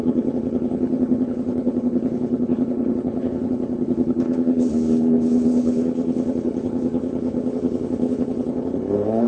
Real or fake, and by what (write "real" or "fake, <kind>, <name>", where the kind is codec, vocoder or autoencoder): fake, codec, HILCodec